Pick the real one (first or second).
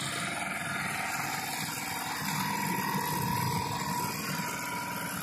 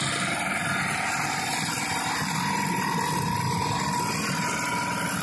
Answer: first